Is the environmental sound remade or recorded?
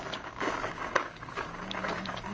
remade